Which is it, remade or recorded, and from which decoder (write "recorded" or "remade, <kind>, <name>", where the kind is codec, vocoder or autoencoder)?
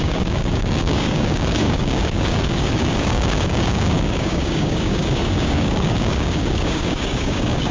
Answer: remade, codec, DAC